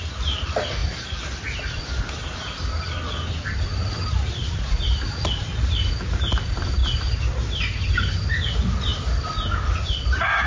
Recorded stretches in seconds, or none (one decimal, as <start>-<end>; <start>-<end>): 0.0-10.5